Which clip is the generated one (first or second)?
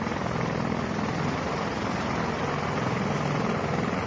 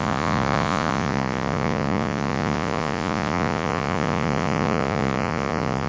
second